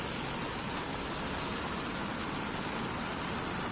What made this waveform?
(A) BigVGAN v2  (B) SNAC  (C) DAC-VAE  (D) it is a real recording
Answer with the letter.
D